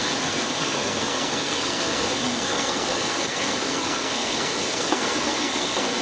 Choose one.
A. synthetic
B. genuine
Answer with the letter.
A